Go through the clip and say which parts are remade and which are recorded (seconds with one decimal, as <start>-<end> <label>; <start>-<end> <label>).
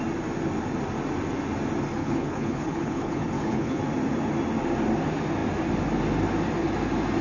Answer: 0.0-2.0 recorded; 2.0-3.8 remade; 3.8-7.2 recorded